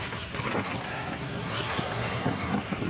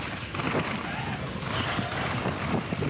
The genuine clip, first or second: second